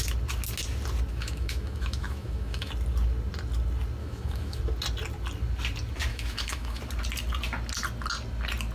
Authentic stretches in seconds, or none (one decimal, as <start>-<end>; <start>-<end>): 0.0-1.1; 2.7-4.0; 4.6-6.1; 6.8-8.7